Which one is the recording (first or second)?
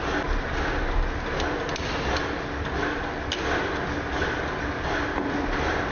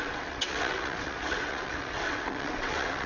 first